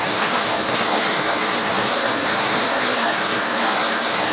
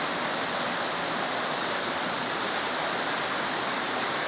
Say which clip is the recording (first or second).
second